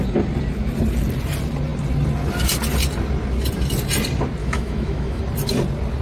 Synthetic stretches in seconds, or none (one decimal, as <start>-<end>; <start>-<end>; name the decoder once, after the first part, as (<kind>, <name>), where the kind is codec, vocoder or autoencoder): 4.4-5.2 (autoencoder, DAC-VAE)